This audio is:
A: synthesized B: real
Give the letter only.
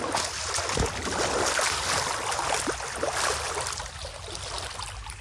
B